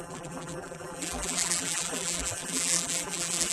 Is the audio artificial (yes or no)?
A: yes